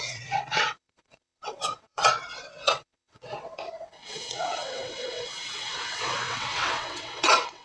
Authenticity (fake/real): fake